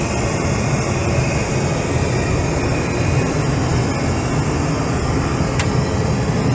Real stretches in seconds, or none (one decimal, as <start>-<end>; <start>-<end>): 0.0-6.5